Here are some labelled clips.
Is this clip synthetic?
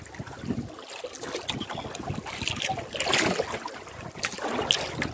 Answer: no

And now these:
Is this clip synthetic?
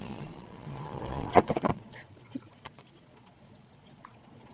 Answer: yes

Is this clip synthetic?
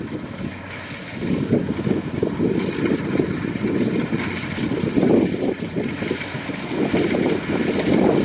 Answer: no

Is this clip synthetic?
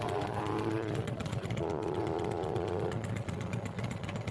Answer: yes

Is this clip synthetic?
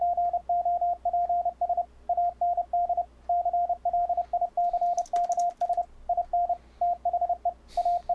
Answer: no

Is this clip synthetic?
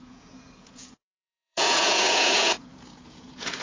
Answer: yes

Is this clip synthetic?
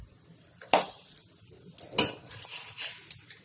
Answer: no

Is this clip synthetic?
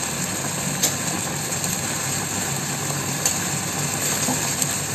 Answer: no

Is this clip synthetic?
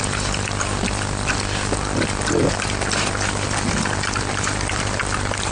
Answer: no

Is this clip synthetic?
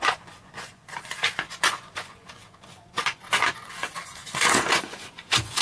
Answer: yes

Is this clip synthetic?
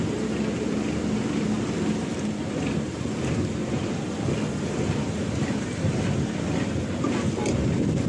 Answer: no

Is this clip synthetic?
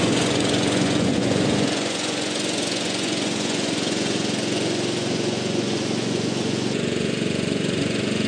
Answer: yes